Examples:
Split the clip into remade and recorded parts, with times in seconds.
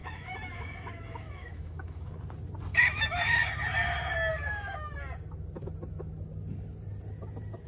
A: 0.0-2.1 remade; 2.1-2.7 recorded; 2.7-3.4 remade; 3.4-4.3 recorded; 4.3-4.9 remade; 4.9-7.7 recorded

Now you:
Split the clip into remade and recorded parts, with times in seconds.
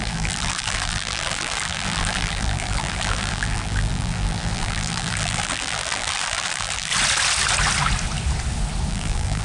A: 0.0-6.9 remade; 6.9-8.9 recorded; 8.9-9.4 remade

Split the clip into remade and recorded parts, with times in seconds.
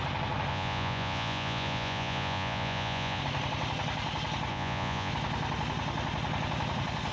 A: 0.0-0.5 recorded; 0.5-3.2 remade; 3.2-4.5 recorded; 4.5-5.1 remade; 5.1-7.1 recorded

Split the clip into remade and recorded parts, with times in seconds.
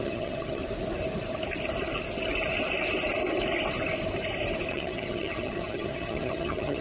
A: 0.0-0.6 remade; 0.6-4.7 recorded; 4.7-6.8 remade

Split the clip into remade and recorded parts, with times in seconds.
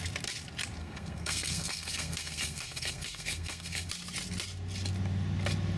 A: 0.0-0.8 recorded; 0.8-3.9 remade; 3.9-5.8 recorded